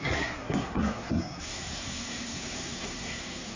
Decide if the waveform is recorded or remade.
remade